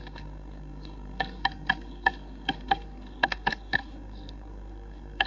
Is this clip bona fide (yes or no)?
no